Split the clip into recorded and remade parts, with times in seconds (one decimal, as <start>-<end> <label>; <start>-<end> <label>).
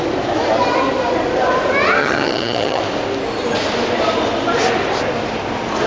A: 0.0-2.0 recorded; 2.0-2.8 remade; 2.8-5.9 recorded